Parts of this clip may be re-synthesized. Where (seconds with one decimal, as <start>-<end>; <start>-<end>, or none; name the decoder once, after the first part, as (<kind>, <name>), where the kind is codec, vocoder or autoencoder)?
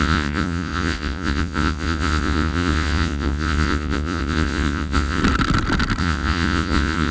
0.0-5.2 (vocoder, Vocos); 6.0-7.1